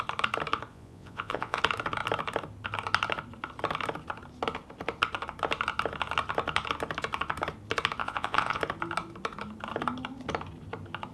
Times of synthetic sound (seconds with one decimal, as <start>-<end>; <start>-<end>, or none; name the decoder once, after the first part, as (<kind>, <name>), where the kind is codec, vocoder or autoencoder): 0.7-1.6 (vocoder, Vocos); 8.0-8.6